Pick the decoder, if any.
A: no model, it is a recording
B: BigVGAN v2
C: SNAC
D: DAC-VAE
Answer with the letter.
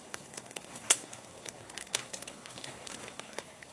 C